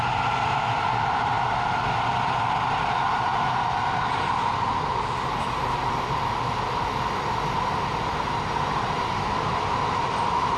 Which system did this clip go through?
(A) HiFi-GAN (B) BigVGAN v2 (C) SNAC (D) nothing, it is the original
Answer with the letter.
D